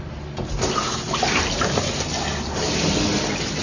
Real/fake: real